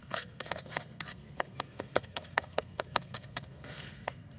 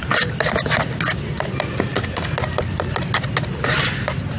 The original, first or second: second